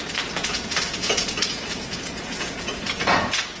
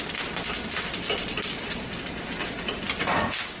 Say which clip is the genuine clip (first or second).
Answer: second